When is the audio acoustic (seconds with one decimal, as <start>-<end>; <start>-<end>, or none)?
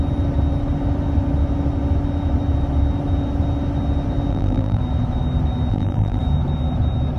0.0-4.3; 4.8-5.7; 6.2-7.2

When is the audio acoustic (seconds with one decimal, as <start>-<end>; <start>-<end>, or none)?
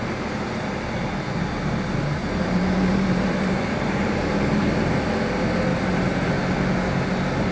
0.0-2.2; 5.0-5.7; 6.4-7.5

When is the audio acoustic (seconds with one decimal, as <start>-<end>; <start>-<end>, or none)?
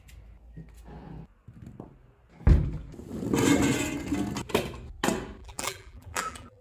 0.0-5.4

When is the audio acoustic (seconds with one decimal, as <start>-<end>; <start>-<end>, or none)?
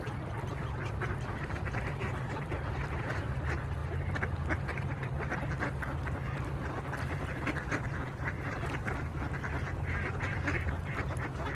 3.8-6.0; 9.1-9.8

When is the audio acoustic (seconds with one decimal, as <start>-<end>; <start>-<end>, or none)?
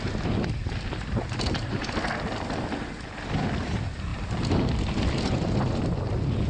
0.0-4.1; 5.8-6.5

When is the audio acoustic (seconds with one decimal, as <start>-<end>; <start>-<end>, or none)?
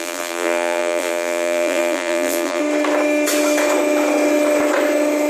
2.6-5.3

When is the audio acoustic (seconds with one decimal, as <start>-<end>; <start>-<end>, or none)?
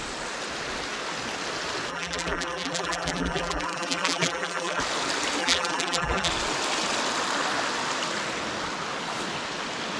0.0-1.9; 4.8-5.4; 6.3-10.0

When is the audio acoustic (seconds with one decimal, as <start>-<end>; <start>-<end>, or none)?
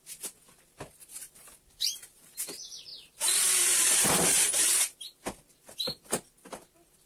0.0-1.2; 2.4-2.9; 4.8-7.1